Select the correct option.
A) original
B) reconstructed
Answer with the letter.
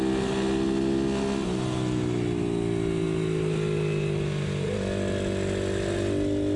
A